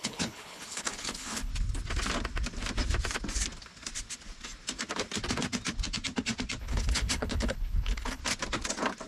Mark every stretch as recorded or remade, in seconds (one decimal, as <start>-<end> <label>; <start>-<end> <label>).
0.0-1.5 remade; 1.5-6.6 recorded; 6.6-8.2 remade; 8.2-9.1 recorded